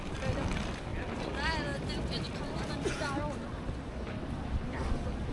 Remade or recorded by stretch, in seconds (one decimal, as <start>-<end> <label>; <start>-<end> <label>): 0.0-5.3 recorded